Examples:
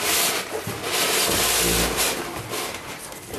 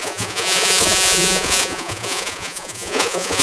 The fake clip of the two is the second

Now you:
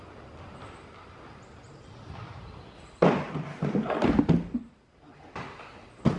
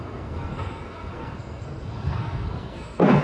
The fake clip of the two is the second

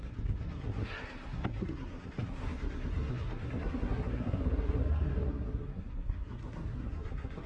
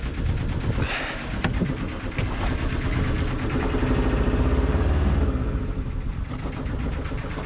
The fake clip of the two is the first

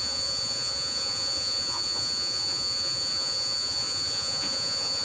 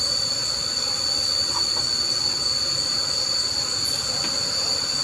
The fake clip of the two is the first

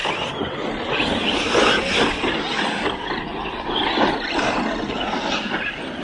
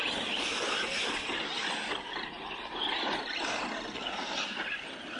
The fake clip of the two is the second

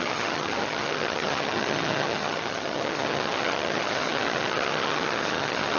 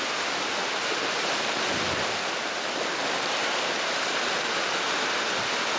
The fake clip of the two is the first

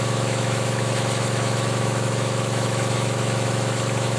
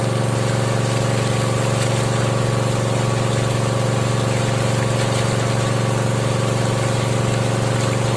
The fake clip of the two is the first